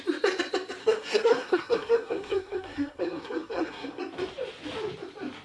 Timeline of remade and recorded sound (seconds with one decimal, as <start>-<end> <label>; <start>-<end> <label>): 0.0-0.8 recorded; 0.8-4.0 remade; 4.0-5.4 recorded